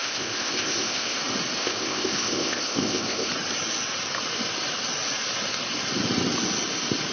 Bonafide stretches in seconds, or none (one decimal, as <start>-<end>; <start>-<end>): 1.2-1.6; 3.3-7.1